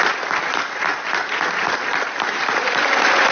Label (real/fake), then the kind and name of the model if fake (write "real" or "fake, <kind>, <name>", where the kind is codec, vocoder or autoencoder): real